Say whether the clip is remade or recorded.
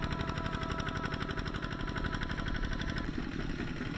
recorded